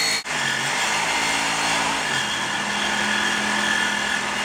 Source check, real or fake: real